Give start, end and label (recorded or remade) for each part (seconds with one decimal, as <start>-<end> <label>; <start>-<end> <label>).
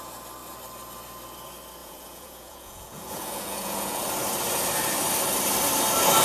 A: 0.0-1.8 recorded; 1.8-4.0 remade; 4.0-6.2 recorded